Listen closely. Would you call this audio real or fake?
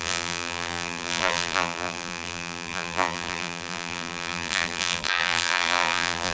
fake